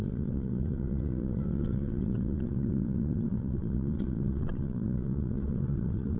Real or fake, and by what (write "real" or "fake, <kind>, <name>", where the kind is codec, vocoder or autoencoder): fake, vocoder, WaveNeXt